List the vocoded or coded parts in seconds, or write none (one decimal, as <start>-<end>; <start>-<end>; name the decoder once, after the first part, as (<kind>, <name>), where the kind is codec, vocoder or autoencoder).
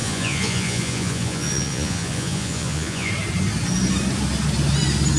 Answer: 0.0-3.1 (vocoder, Vocos)